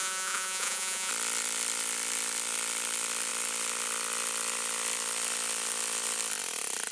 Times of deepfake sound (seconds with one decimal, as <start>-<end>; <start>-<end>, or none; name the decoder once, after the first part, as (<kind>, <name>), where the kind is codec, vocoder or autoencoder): 0.0-1.1 (vocoder, Vocos)